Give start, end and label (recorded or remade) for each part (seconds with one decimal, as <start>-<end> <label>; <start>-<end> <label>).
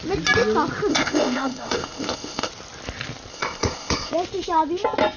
0.0-0.9 recorded; 0.9-2.5 remade; 2.5-3.3 recorded; 3.3-4.1 remade; 4.1-5.2 recorded